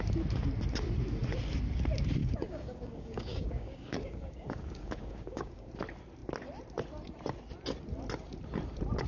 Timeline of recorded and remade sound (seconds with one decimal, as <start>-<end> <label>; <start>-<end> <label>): 0.0-2.2 recorded; 2.2-5.7 remade; 5.7-9.1 recorded